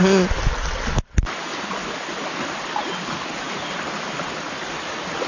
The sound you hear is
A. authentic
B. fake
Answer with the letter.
A